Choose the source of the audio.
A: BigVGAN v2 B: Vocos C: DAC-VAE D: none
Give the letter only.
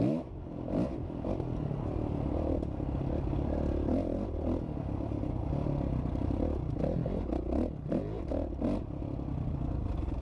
D